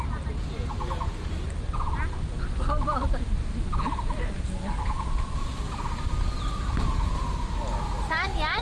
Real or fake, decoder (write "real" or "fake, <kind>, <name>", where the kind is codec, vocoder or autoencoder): real